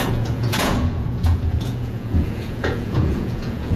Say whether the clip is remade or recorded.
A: remade